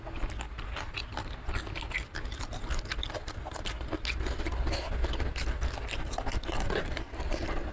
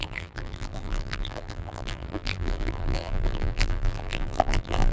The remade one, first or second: second